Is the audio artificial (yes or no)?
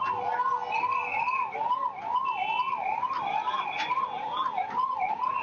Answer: no